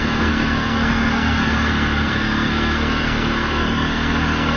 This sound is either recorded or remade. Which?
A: remade